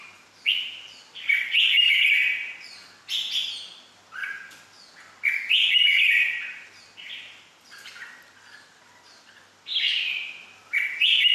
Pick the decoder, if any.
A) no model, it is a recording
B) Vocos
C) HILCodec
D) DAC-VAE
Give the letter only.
A